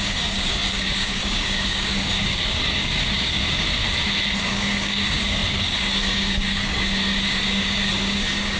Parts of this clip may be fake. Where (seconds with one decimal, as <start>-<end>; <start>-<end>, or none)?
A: 0.0-3.8; 4.4-8.6